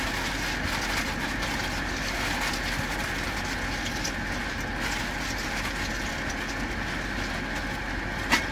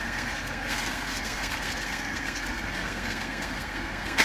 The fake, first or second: second